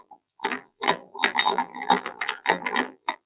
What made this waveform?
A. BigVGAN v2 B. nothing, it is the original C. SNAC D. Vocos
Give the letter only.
A